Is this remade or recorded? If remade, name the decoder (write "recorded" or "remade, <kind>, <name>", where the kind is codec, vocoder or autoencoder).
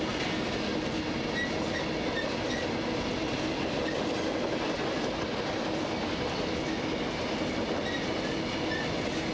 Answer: recorded